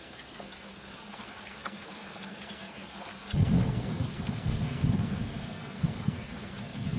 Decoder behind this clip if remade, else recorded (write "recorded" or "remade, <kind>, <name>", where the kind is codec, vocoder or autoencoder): remade, codec, SNAC